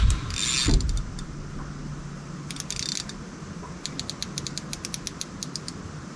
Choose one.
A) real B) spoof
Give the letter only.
A